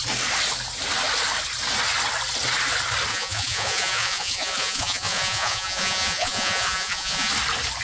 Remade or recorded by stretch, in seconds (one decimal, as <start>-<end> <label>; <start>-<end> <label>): 0.0-3.1 recorded; 3.1-7.3 remade; 7.3-7.8 recorded